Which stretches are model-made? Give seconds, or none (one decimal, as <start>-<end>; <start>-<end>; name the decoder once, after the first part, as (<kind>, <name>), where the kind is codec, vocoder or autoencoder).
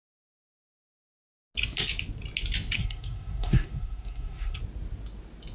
2.8-4.6 (codec, SNAC)